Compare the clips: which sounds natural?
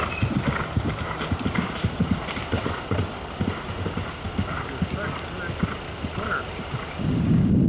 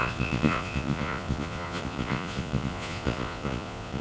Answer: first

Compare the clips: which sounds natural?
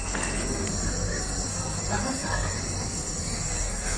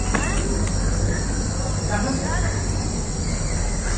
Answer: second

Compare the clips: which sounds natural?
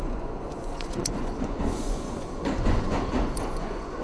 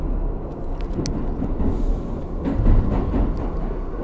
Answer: second